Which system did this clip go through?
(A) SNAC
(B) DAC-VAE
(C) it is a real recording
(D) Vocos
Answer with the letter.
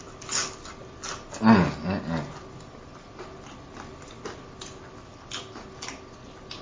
C